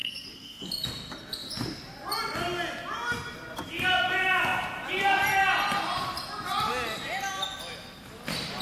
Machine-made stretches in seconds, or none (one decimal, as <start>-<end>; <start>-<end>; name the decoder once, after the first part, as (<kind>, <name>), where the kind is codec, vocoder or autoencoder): 0.0-0.6 (codec, SNAC)